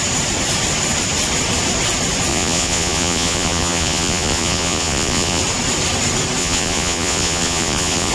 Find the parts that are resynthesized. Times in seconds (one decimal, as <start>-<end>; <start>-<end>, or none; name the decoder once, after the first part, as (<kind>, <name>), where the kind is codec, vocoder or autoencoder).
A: 2.3-5.4 (vocoder, Vocos); 6.4-8.1